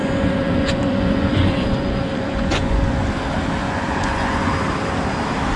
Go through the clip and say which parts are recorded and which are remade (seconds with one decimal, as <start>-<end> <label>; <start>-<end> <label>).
0.0-3.1 remade; 3.1-3.6 recorded; 3.6-4.5 remade; 4.5-5.6 recorded